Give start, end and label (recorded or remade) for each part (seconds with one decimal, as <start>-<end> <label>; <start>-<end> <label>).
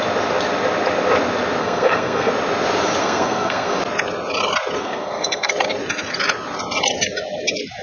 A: 0.0-1.6 recorded; 1.6-2.3 remade; 2.3-3.0 recorded; 3.0-3.8 remade; 3.8-4.8 recorded; 4.8-5.5 remade; 5.5-7.8 recorded